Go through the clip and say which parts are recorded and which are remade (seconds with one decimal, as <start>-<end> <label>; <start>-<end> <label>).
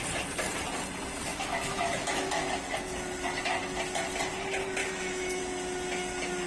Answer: 0.0-1.3 recorded; 1.3-2.5 remade; 2.5-4.8 recorded; 4.8-5.4 remade; 5.4-6.5 recorded